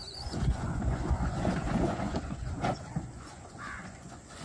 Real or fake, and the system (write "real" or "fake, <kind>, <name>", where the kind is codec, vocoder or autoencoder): fake, vocoder, Vocos